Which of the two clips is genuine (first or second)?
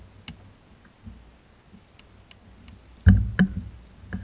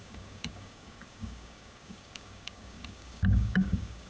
first